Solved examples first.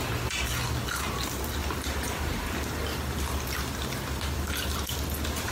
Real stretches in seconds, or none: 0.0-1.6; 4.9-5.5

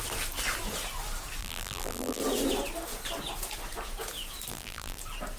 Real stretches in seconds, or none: 0.0-1.4; 2.2-4.5; 5.0-5.4